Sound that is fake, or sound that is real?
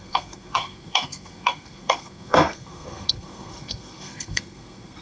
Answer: fake